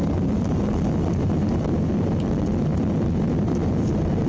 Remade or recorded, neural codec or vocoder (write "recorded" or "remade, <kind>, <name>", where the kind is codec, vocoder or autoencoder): recorded